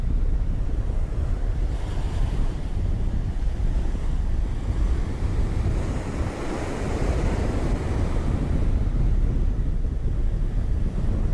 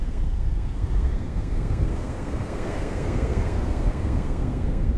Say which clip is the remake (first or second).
second